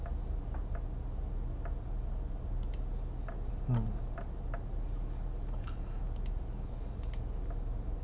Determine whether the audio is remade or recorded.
recorded